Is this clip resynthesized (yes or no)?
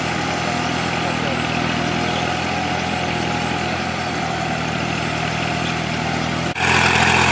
no